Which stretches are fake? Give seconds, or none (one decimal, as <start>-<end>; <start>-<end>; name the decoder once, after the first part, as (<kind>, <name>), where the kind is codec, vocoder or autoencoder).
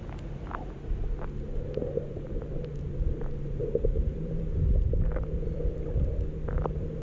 1.8-7.0 (vocoder, BigVGAN v2)